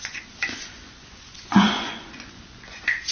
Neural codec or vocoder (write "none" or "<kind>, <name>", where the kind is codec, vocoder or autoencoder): vocoder, Vocos